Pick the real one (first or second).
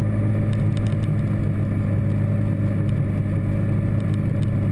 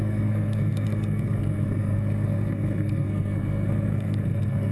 first